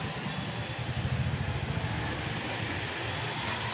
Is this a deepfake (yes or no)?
no